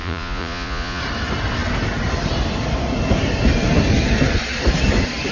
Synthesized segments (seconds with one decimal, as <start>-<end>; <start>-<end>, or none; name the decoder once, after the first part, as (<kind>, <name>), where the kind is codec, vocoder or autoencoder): 0.0-1.0 (vocoder, Vocos)